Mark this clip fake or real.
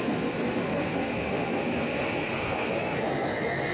real